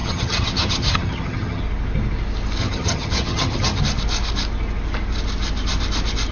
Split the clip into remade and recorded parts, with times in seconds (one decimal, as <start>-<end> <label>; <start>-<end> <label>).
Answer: 0.0-1.6 remade; 1.6-2.6 recorded; 2.6-3.8 remade; 3.8-6.3 recorded